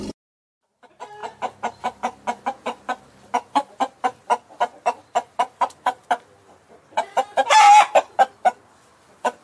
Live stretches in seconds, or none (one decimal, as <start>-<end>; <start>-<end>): 0.0-9.4